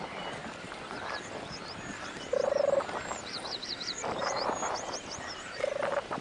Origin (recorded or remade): remade